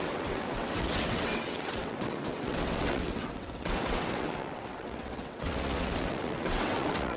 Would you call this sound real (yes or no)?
no